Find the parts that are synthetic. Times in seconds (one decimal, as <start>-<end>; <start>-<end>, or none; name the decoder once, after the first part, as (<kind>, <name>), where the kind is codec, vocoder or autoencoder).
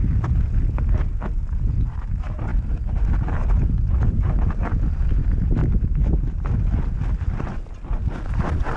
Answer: 2.5-3.1 (vocoder, BigVGAN v2); 5.6-6.4